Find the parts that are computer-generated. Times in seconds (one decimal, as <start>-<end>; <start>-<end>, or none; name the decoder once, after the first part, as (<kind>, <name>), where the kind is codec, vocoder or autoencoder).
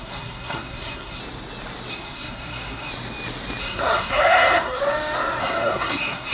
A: 0.0-1.2 (codec, SNAC); 1.9-2.9; 3.6-4.8; 5.4-6.3